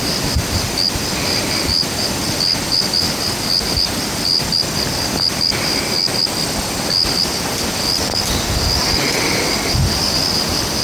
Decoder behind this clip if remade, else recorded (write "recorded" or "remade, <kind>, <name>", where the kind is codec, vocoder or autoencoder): recorded